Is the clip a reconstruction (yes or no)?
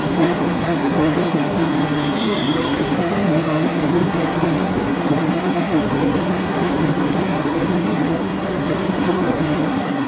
yes